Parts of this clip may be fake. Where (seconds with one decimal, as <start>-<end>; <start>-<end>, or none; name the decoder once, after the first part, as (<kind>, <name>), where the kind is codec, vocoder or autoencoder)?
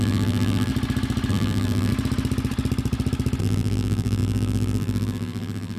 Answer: 0.0-0.7 (vocoder, BigVGAN v2); 1.3-1.9; 3.4-5.8